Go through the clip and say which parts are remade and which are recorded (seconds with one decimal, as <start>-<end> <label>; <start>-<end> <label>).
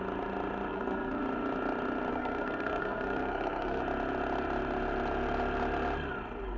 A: 0.0-0.7 recorded; 0.7-1.2 remade; 1.2-2.1 recorded; 2.1-3.8 remade; 3.8-6.6 recorded